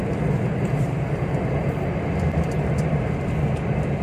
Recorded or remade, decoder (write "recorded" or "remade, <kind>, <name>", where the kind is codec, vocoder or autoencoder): recorded